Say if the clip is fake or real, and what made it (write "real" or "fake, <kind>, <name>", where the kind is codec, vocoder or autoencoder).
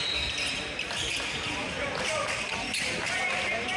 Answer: real